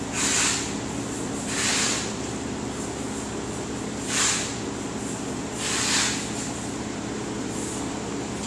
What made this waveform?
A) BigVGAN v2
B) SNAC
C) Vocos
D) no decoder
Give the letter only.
D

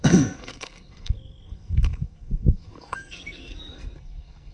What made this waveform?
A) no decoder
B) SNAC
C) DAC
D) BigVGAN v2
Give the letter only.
B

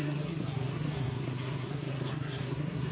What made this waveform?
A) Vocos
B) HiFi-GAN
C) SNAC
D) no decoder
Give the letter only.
C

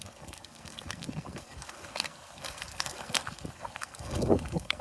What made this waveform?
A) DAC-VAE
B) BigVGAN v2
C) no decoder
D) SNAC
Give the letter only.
D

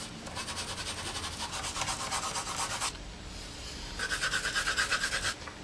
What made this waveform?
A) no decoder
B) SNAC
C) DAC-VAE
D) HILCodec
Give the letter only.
A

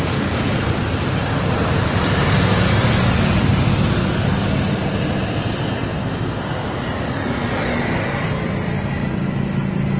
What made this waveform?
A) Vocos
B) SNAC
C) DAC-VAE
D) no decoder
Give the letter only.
D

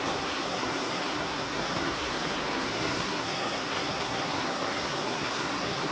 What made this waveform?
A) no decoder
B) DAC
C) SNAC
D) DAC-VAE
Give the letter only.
C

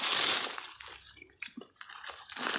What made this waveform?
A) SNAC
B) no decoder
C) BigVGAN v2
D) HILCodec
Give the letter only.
B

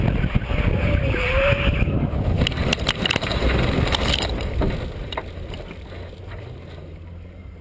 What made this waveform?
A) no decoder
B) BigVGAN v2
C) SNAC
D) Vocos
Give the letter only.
A